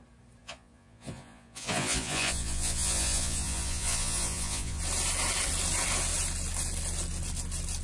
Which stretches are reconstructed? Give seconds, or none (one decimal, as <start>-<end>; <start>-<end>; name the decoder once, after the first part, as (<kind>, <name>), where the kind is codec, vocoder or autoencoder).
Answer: 0.4-4.8 (vocoder, Vocos)